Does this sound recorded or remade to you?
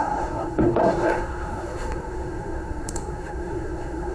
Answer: remade